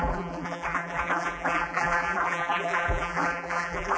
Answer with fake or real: fake